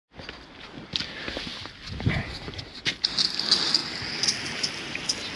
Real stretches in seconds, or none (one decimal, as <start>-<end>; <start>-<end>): 0.0-5.4